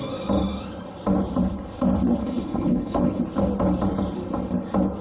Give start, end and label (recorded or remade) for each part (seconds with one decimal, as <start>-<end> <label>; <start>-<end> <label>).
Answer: 0.0-2.2 recorded; 2.2-3.2 remade; 3.2-5.0 recorded